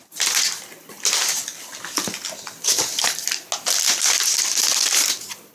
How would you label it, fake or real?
real